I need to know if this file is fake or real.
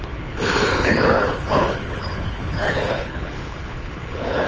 fake